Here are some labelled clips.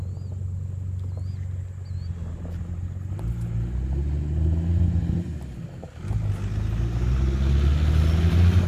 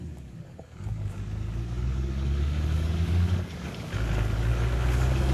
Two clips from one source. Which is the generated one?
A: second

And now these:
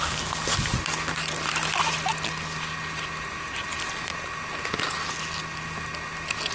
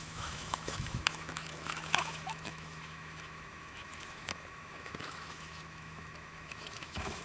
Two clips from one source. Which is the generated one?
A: second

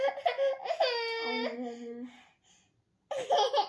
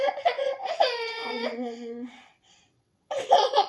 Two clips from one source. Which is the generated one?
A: second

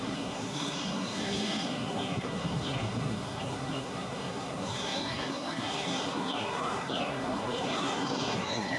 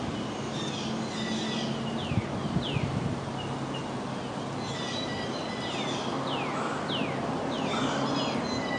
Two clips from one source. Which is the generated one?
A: first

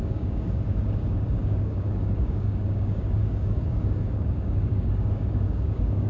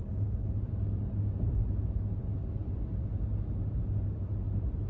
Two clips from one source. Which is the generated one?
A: first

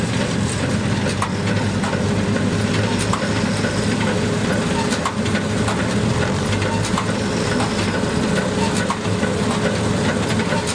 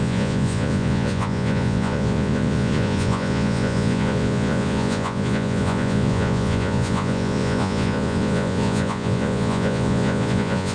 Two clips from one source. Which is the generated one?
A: second